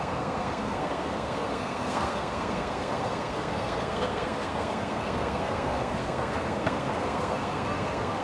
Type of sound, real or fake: fake